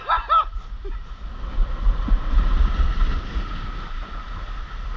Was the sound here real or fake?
real